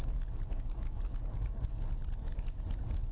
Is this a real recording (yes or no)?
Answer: yes